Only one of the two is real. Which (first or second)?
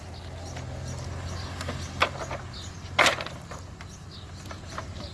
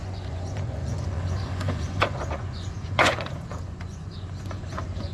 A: first